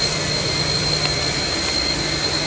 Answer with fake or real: real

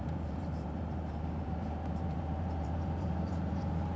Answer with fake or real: fake